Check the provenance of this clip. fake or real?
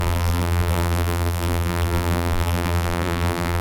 fake